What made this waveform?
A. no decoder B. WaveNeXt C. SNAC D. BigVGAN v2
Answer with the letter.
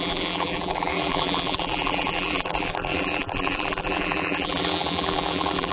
D